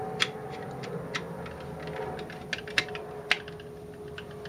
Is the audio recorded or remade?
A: recorded